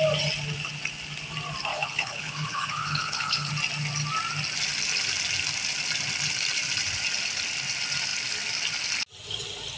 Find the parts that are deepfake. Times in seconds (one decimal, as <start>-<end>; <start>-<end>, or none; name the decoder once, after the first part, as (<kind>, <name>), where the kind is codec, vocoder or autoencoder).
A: 1.7-3.5 (codec, HILCodec)